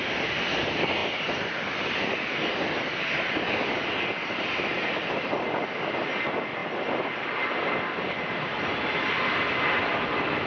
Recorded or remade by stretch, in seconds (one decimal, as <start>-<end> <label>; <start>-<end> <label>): 0.0-10.5 recorded